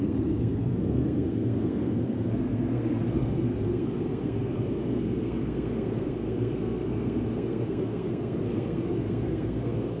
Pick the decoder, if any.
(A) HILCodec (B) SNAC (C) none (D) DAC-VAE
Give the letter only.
B